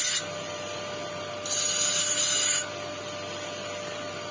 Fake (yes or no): no